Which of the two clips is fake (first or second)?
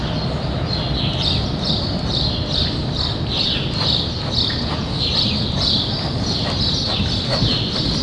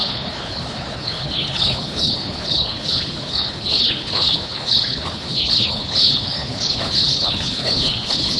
second